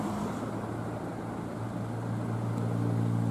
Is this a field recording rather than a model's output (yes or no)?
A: yes